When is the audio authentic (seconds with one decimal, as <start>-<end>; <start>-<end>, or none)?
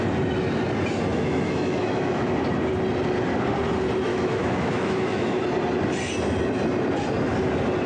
0.0-1.1; 2.3-4.1; 5.4-7.9